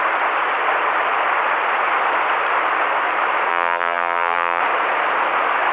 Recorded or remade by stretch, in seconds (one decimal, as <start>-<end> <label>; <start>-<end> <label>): 0.0-3.5 recorded; 3.5-4.6 remade; 4.6-5.7 recorded